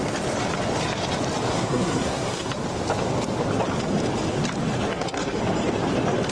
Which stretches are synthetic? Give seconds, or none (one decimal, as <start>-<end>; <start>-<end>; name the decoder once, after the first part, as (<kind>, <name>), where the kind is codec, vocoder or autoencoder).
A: 1.5-2.5 (codec, SNAC); 4.9-5.4